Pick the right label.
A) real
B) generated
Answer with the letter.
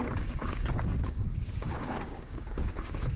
B